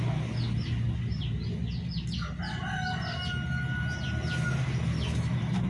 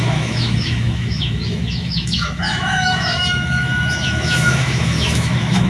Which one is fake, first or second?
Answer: second